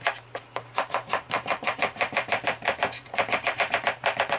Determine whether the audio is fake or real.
fake